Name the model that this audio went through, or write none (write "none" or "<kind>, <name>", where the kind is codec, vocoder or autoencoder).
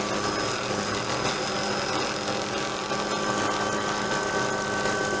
none